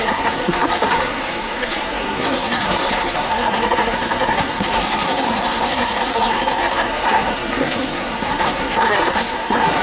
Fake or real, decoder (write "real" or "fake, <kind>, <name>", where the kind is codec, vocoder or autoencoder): fake, codec, SNAC